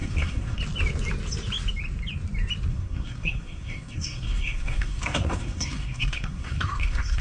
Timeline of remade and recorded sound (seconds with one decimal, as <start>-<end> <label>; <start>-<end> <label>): 0.0-0.6 remade; 0.6-2.7 recorded; 2.7-7.2 remade